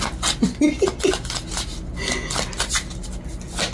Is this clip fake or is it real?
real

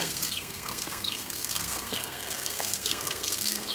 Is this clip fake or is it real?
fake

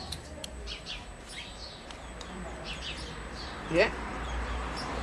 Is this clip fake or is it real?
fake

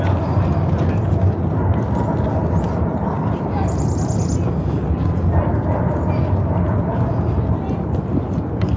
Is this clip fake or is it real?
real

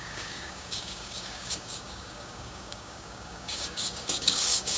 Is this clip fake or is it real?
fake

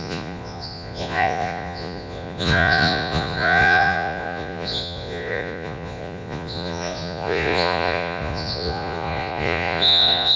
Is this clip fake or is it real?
fake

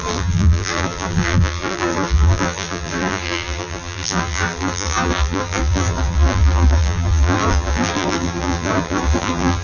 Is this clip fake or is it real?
fake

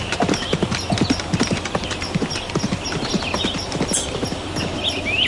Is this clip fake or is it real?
real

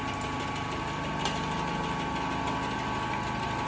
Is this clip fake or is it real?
real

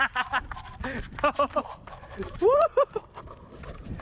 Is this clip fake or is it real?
fake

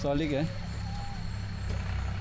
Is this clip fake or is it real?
real